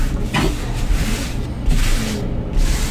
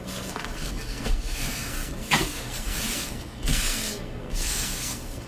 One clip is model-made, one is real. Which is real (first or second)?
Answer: first